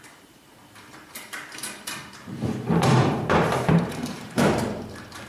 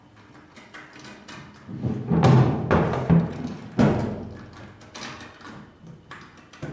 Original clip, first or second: second